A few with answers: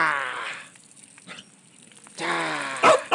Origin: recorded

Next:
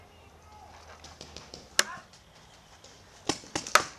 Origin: recorded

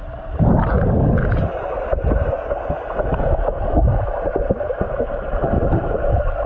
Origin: recorded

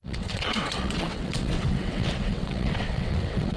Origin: remade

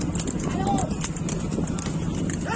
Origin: recorded